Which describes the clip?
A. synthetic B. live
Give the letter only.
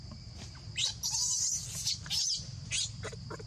B